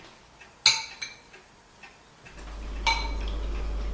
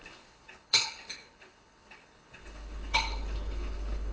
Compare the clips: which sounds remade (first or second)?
second